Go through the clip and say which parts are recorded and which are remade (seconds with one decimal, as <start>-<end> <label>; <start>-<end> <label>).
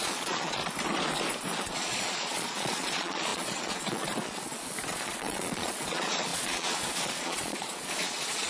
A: 0.0-0.6 remade; 0.6-1.6 recorded; 1.6-8.5 remade